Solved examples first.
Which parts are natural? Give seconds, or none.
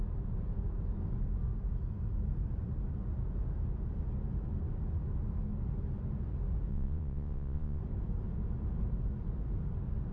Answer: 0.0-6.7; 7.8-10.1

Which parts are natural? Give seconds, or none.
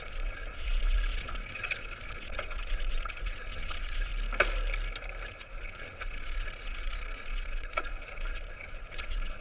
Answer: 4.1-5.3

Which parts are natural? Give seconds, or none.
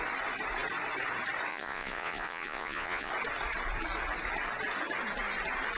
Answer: 0.0-1.5; 3.1-5.8